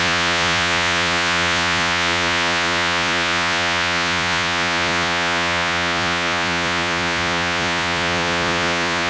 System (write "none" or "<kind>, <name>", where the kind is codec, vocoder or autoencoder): vocoder, Vocos